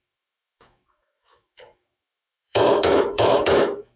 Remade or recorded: remade